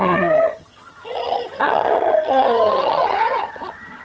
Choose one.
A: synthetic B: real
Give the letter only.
A